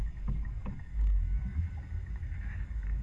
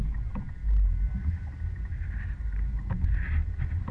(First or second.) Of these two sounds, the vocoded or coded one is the first